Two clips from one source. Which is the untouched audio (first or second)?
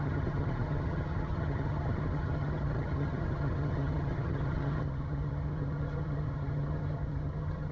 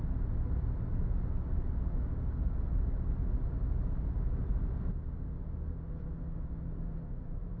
second